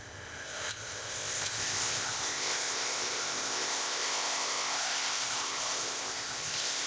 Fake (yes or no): yes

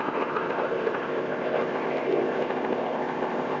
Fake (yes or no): yes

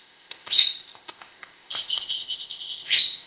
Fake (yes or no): yes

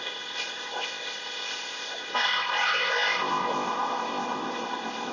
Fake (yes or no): yes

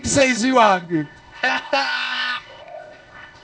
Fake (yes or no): yes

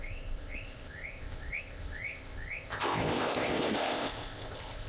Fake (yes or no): yes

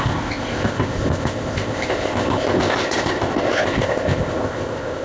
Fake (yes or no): yes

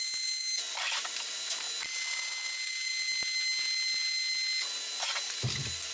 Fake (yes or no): no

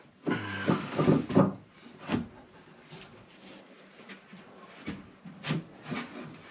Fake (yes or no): no